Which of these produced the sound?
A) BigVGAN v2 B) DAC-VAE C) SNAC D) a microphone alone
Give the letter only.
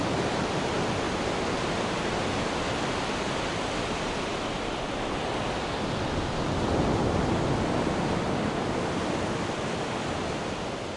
D